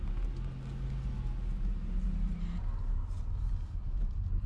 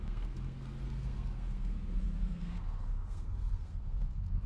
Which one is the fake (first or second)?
second